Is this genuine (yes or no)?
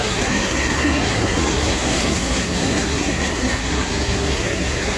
no